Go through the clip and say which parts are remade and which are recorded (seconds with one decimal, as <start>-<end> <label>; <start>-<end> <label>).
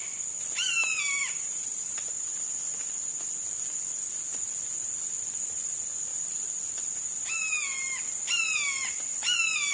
0.0-2.1 remade; 2.1-6.1 recorded; 6.1-6.8 remade; 6.8-9.7 recorded